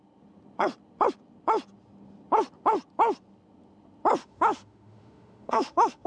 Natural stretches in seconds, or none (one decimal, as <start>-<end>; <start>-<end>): 0.0-4.2